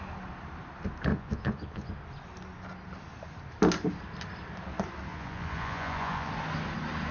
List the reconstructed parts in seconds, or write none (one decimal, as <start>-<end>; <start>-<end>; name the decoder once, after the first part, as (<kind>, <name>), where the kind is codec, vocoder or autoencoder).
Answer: 1.1-1.9 (vocoder, Vocos); 5.1-6.3